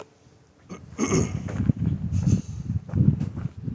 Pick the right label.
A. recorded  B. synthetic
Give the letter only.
A